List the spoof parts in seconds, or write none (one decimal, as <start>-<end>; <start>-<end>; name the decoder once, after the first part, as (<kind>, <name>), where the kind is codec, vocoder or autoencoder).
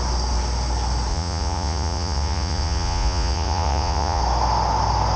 1.1-4.2 (vocoder, Vocos)